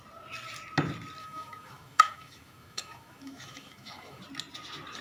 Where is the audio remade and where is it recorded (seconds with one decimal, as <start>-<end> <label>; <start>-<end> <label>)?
0.0-1.2 recorded; 1.2-4.2 remade; 4.2-5.0 recorded